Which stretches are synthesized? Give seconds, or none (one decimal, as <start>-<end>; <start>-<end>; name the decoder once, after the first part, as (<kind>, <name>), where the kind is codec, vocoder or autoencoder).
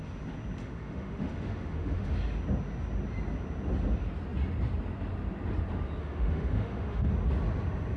0.6-2.1 (autoencoder, DAC-VAE); 6.0-7.1